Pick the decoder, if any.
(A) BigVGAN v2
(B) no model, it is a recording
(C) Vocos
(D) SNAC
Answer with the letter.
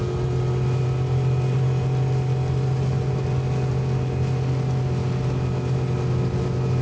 B